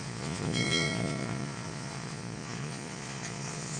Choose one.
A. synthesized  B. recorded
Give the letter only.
A